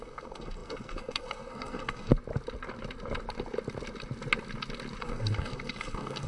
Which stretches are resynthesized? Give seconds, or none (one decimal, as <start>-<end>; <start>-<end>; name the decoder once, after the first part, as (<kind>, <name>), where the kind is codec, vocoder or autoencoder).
0.0-2.1 (codec, SNAC); 5.0-6.3